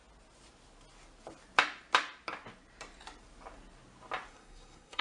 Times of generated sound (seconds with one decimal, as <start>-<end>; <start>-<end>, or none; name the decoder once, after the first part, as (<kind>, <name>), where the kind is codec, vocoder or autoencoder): 4.3-5.0 (codec, SNAC)